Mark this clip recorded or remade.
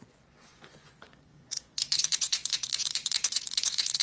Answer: remade